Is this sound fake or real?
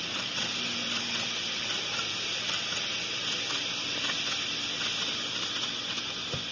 real